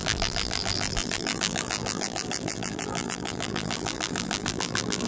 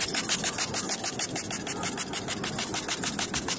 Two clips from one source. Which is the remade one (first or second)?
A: first